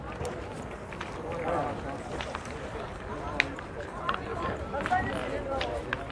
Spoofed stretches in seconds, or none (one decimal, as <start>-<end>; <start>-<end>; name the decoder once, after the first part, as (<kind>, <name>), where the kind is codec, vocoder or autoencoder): 0.0-4.3 (vocoder, BigVGAN v2); 5.1-6.1